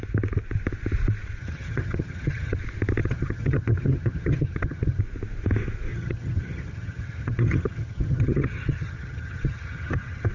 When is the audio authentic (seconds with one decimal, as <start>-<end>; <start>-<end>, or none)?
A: 0.0-1.4; 2.6-3.0; 5.0-5.9